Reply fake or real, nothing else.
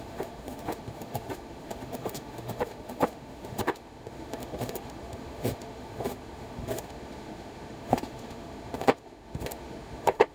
fake